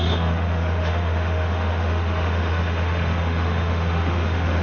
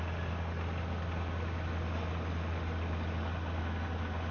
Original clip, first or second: second